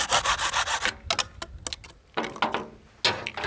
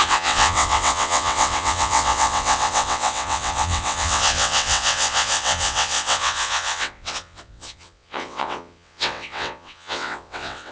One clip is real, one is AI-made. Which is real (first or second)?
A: first